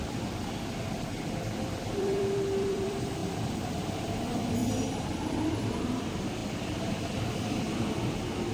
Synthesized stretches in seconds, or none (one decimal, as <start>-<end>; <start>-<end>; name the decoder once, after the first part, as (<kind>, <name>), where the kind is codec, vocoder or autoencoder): 0.0-4.6 (vocoder, BigVGAN v2); 5.3-8.5